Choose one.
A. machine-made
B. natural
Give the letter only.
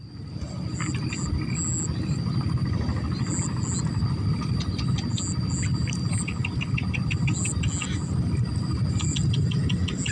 B